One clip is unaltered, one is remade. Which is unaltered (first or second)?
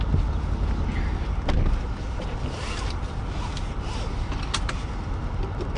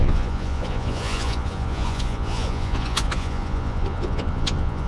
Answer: first